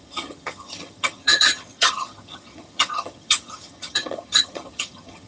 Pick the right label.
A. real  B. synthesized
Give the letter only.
B